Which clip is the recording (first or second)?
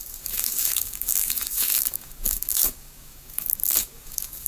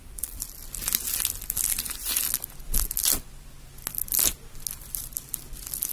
second